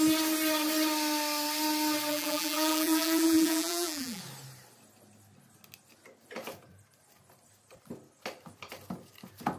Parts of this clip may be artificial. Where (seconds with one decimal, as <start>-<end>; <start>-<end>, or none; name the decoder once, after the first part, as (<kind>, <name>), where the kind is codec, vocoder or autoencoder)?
2.1-4.2 (vocoder, BigVGAN v2)